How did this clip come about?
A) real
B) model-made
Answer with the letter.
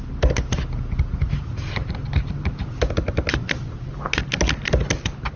A